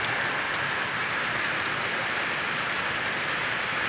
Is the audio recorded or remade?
recorded